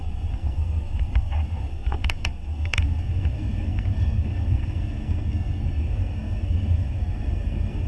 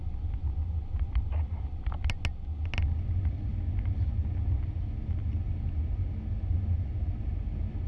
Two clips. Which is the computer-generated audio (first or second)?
first